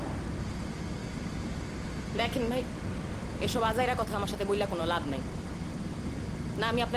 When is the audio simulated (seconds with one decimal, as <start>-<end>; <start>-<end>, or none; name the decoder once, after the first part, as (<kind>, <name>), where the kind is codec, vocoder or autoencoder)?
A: 1.0-1.6 (vocoder, BigVGAN v2)